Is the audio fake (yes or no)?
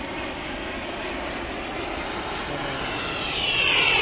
no